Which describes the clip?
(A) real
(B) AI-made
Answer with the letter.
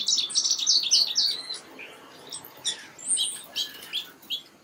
A